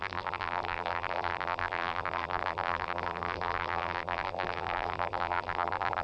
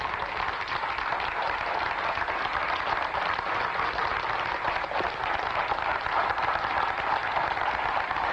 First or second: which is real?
second